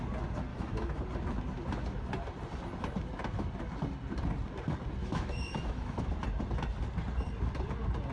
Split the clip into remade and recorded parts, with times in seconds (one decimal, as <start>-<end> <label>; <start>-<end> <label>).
0.0-0.5 recorded; 0.5-1.0 remade; 1.0-5.0 recorded; 5.0-6.1 remade; 6.1-8.1 recorded